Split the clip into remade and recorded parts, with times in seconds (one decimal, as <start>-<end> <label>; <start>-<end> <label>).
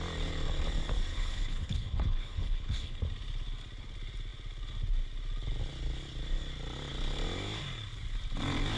0.0-1.1 recorded; 1.1-3.0 remade; 3.0-8.8 recorded